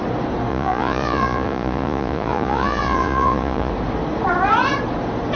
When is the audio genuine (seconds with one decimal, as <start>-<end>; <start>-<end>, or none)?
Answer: 0.0-0.5; 3.7-5.4